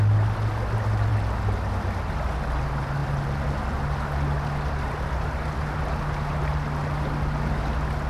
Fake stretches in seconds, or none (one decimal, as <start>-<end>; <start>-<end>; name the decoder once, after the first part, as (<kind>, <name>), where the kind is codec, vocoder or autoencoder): none